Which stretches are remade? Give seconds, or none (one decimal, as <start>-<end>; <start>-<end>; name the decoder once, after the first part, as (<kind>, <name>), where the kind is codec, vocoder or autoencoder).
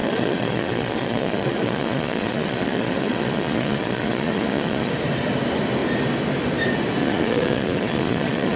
0.0-4.9 (vocoder, Vocos); 7.0-8.6